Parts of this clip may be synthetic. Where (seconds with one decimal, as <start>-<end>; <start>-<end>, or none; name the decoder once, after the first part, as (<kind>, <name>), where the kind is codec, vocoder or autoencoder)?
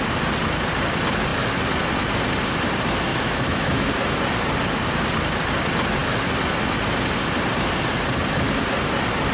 3.1-3.9 (autoencoder, DAC-VAE)